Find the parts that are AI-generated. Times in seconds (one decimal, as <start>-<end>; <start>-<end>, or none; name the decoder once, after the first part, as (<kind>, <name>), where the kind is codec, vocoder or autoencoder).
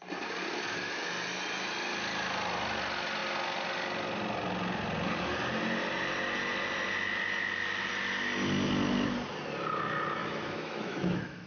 10.2-11.5 (autoencoder, DAC-VAE)